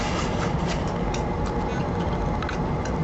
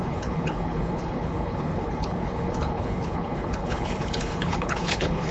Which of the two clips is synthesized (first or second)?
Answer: second